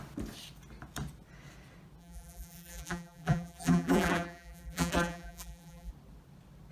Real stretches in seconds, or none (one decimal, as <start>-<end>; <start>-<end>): 0.0-2.0; 5.9-6.7